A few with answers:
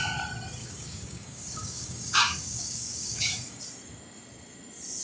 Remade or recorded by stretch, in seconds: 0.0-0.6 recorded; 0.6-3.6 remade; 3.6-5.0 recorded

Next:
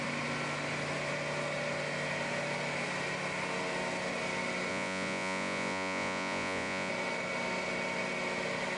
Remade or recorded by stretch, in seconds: 0.0-4.7 recorded; 4.7-6.9 remade; 6.9-8.8 recorded

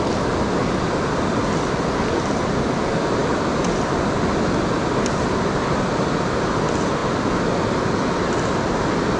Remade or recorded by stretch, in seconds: 0.0-9.2 recorded

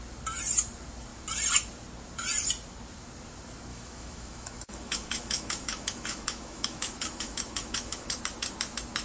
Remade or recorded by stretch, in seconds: 0.0-3.7 recorded; 3.7-8.2 remade; 8.2-9.0 recorded

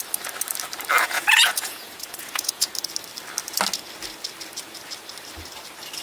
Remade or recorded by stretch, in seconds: 0.0-1.0 recorded; 1.0-2.7 remade; 2.7-6.0 recorded

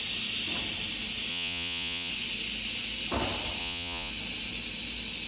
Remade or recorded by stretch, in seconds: 0.0-1.3 recorded; 1.3-2.1 remade; 2.1-3.6 recorded; 3.6-4.1 remade; 4.1-5.3 recorded

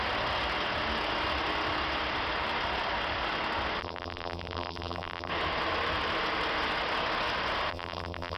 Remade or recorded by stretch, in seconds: 0.0-3.8 recorded; 3.8-5.3 remade; 5.3-7.7 recorded; 7.7-8.4 remade